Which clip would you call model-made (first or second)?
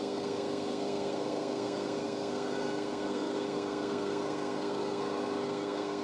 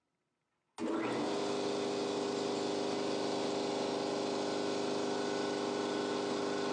first